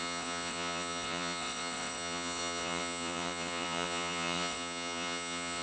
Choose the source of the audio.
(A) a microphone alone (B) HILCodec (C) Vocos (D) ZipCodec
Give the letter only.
C